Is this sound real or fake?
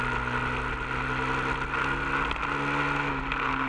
real